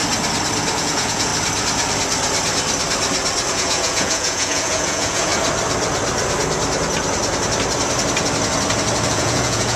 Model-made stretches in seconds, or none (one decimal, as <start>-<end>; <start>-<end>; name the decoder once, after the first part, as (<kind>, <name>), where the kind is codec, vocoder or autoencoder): 0.8-1.3 (vocoder, Vocos); 3.5-5.3; 9.1-9.8